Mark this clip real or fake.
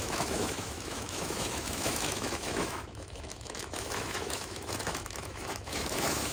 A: fake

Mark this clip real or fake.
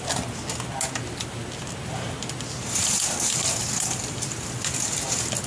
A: real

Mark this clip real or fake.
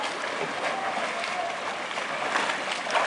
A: real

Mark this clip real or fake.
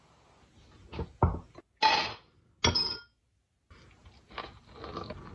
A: real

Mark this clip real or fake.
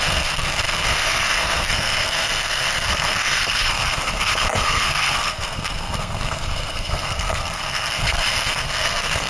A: fake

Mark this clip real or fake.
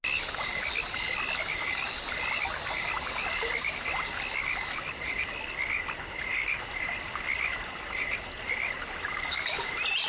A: real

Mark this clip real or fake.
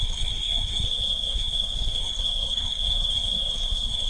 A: fake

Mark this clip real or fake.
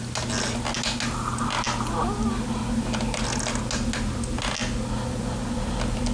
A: real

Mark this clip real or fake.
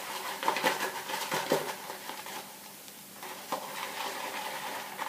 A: fake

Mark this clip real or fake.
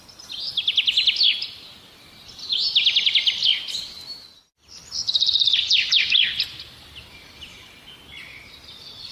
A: real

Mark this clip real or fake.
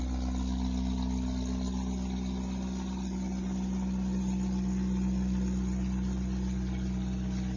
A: real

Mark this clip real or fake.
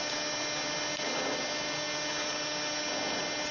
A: real